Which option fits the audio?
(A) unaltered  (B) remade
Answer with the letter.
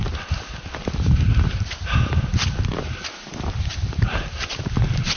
A